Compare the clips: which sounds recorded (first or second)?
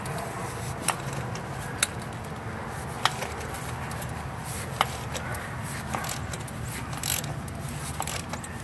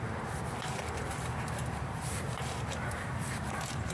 first